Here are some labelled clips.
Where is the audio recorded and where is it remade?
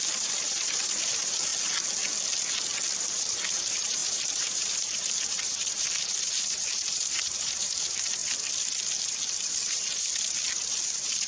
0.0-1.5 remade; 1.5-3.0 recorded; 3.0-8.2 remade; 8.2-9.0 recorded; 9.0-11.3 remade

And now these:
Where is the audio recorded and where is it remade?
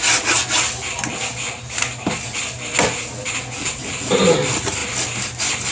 0.0-0.4 remade; 0.4-3.8 recorded; 3.8-4.8 remade; 4.8-5.7 recorded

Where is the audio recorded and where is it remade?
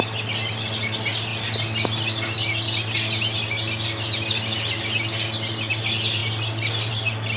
0.0-1.3 remade; 1.3-5.7 recorded; 5.7-7.4 remade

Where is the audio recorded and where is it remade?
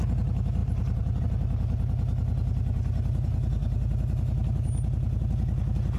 0.0-0.6 recorded; 0.6-1.2 remade; 1.2-6.0 recorded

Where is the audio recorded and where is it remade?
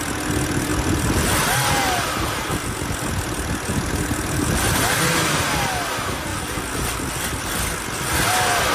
0.0-8.7 recorded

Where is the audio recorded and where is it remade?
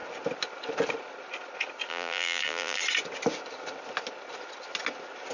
0.0-1.9 recorded; 1.9-2.8 remade; 2.8-5.3 recorded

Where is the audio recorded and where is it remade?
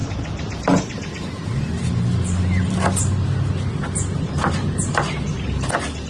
0.0-6.1 recorded